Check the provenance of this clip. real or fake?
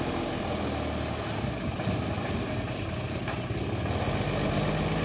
real